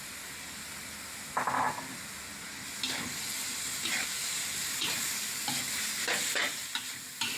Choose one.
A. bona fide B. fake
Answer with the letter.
A